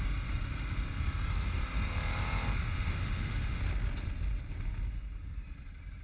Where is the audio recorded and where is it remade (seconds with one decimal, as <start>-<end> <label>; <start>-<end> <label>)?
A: 0.0-2.7 recorded; 2.7-3.6 remade; 3.6-6.0 recorded